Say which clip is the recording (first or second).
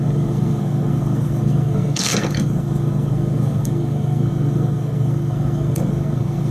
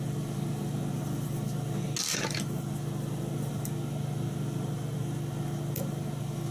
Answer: second